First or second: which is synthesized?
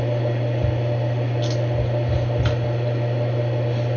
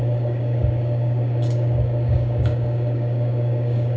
second